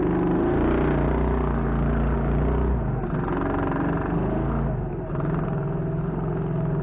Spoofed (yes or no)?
no